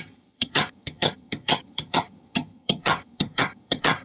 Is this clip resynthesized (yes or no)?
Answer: yes